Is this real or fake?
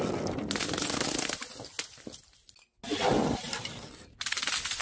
real